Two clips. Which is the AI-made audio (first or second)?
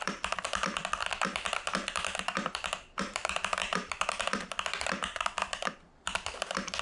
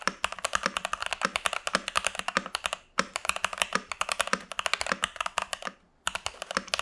first